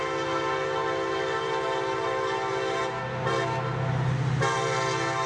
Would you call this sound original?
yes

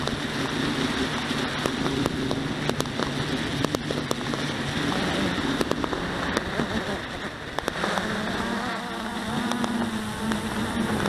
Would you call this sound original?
yes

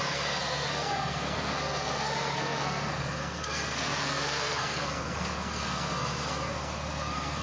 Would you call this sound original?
no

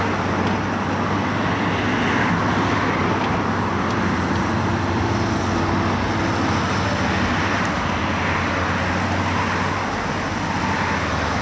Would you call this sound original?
yes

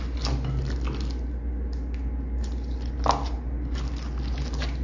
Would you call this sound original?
yes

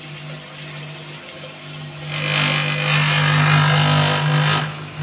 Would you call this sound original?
yes